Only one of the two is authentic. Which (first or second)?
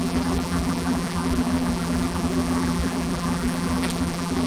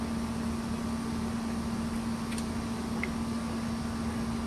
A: second